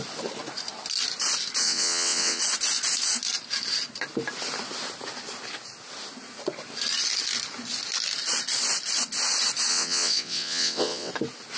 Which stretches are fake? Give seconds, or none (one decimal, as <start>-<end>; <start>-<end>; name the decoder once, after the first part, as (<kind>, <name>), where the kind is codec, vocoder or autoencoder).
1.6-2.4 (vocoder, WaveNeXt); 9.7-11.1